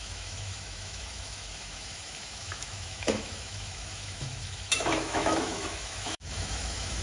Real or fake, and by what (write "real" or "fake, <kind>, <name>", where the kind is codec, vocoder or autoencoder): fake, autoencoder, DAC-VAE